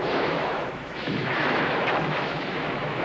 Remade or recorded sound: remade